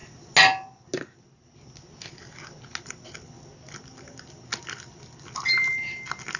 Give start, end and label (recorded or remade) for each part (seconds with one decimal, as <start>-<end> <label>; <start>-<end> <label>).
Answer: 0.0-6.4 recorded